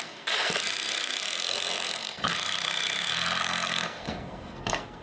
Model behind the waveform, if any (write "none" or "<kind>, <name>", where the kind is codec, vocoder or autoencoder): codec, SNAC